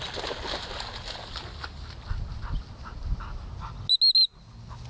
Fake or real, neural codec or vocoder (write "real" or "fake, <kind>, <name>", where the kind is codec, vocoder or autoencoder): real